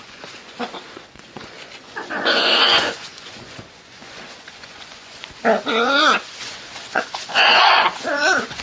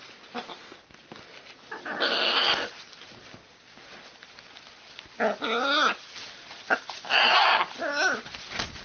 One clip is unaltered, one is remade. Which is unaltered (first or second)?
second